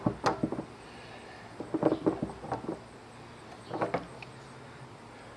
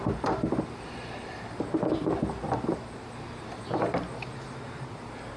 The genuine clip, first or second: first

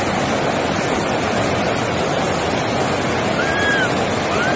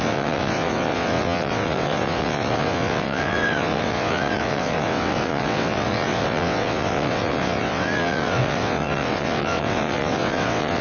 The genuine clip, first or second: first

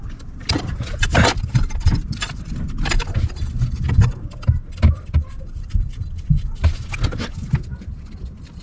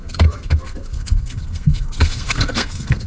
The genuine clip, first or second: first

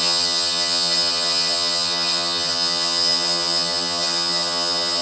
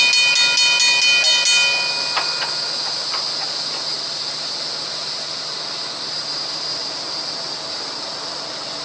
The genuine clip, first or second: second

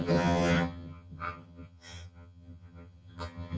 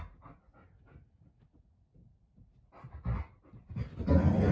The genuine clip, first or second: second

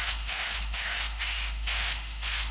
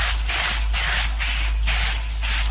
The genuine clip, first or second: second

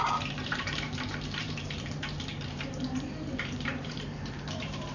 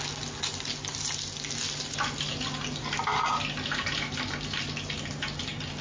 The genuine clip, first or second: second